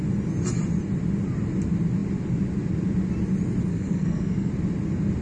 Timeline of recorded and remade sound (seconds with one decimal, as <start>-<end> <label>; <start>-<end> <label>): 0.0-3.7 recorded; 3.7-4.5 remade; 4.5-5.2 recorded